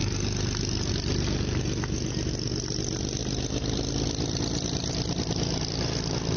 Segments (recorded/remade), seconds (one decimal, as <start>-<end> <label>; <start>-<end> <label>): 0.0-6.4 recorded